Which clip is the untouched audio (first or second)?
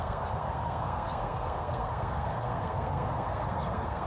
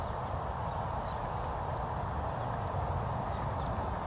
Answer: second